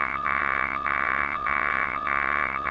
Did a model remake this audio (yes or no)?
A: yes